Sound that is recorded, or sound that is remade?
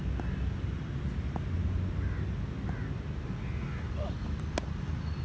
recorded